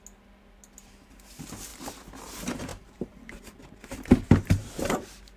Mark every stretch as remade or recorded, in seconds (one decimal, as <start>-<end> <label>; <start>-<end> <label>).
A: 0.0-2.7 recorded; 2.7-5.4 remade